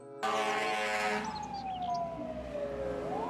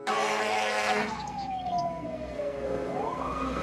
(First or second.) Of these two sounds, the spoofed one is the second